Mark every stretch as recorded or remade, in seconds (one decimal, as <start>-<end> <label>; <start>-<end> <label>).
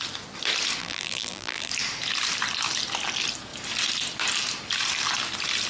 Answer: 0.0-0.8 recorded; 0.8-1.7 remade; 1.7-5.7 recorded